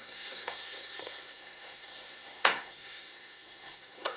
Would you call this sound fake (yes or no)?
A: yes